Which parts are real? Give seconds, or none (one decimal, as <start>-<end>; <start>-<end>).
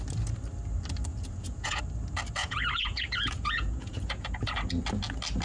0.0-1.1; 1.8-2.4; 4.5-5.4